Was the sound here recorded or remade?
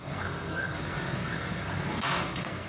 remade